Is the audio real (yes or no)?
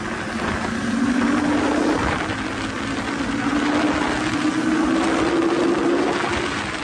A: yes